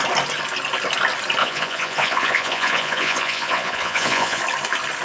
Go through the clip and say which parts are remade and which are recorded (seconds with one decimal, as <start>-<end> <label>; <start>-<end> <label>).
0.0-1.4 recorded; 1.4-4.4 remade; 4.4-5.0 recorded